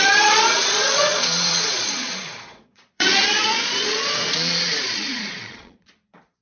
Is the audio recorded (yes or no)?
no